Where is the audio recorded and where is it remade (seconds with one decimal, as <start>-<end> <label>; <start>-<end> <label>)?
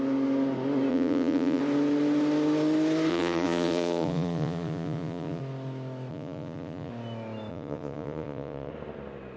0.0-0.9 recorded; 0.9-1.6 remade; 1.6-3.1 recorded; 3.1-5.4 remade; 5.4-6.1 recorded; 6.1-6.9 remade; 6.9-7.5 recorded; 7.5-8.7 remade; 8.7-9.4 recorded